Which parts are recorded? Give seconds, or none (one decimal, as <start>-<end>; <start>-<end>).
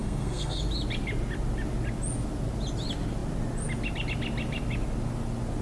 0.6-5.6